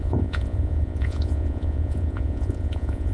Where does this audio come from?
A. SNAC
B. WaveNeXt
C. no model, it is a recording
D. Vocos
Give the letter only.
D